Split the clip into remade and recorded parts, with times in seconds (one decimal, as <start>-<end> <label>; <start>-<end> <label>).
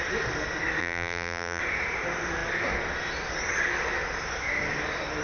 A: 0.0-0.8 recorded; 0.8-1.6 remade; 1.6-5.2 recorded